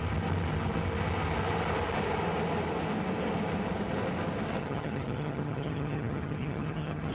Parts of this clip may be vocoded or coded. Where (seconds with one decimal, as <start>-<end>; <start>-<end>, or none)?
4.6-7.1